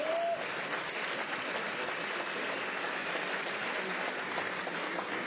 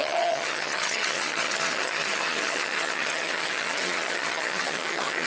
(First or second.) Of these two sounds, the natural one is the first